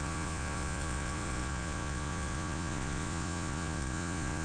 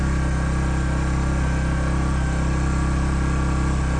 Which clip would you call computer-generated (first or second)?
first